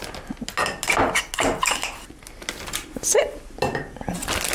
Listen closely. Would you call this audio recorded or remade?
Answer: recorded